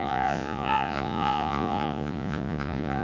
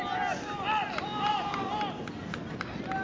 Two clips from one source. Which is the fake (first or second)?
first